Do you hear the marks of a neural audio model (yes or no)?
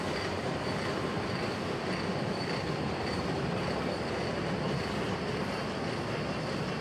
no